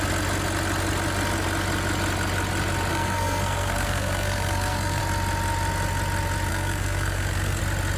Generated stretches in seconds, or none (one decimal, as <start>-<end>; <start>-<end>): 2.9-5.0; 6.5-7.6